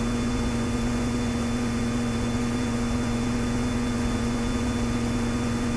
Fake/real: fake